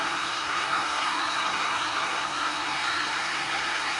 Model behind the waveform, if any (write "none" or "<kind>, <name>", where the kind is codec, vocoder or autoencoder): codec, SNAC